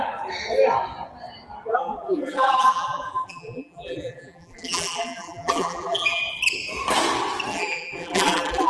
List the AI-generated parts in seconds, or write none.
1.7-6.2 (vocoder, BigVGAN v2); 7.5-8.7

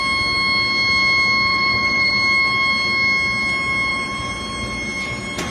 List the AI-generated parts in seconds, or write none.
1.5-2.1 (vocoder, BigVGAN v2); 3.9-5.5

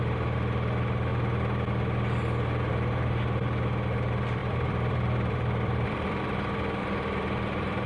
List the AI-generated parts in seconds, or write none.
4.4-6.2 (vocoder, BigVGAN v2); 6.8-7.9

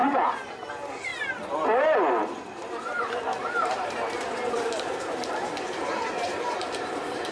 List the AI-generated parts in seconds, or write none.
0.0-0.7 (vocoder, BigVGAN v2); 2.6-7.3

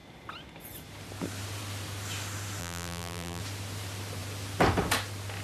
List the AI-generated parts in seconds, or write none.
2.6-3.4 (vocoder, BigVGAN v2)

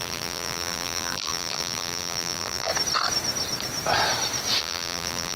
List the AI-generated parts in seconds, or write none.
0.0-2.7 (vocoder, BigVGAN v2); 4.6-5.4